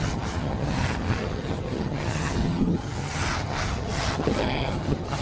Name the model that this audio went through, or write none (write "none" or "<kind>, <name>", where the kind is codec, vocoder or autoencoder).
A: vocoder, HiFi-GAN